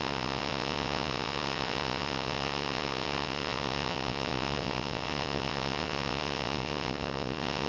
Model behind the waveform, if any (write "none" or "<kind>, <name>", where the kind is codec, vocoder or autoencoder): vocoder, WaveNeXt